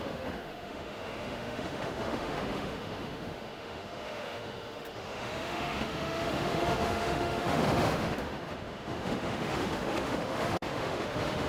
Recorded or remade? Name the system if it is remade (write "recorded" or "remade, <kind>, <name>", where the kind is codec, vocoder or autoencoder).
remade, autoencoder, DAC-VAE